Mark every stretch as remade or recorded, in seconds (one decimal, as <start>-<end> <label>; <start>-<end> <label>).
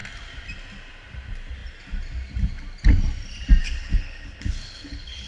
0.0-3.6 recorded; 3.6-5.3 remade